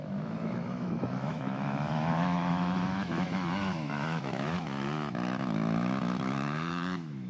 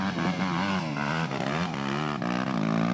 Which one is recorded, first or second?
second